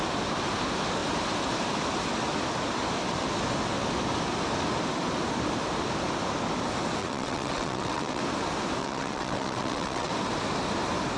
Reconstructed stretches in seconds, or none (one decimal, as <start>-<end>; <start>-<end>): 7.0-8.2; 8.8-10.1